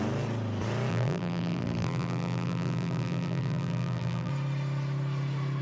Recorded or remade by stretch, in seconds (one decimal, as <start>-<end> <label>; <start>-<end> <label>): 0.0-0.9 recorded; 0.9-4.3 remade; 4.3-5.6 recorded